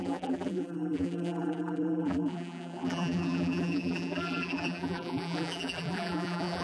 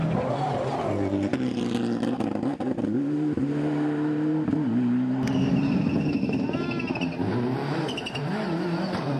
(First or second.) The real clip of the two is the second